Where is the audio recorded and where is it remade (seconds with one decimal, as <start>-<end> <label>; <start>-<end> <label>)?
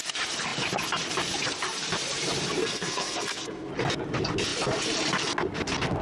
0.0-2.6 recorded; 2.6-3.7 remade; 3.7-6.0 recorded